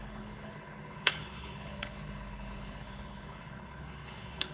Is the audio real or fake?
fake